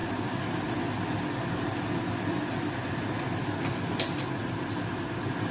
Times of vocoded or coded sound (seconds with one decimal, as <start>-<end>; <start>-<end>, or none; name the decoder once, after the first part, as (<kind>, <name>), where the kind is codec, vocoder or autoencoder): none